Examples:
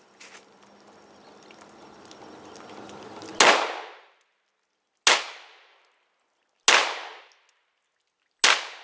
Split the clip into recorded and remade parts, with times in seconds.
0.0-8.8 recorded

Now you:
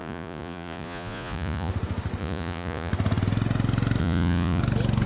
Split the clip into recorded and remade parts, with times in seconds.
0.0-1.7 remade; 1.7-2.2 recorded; 2.2-2.9 remade; 2.9-4.0 recorded; 4.0-4.6 remade; 4.6-5.1 recorded

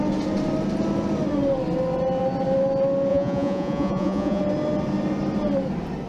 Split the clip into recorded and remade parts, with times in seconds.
0.0-3.1 recorded; 3.1-4.4 remade; 4.4-6.1 recorded